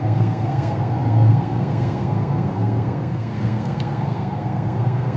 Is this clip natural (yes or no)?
no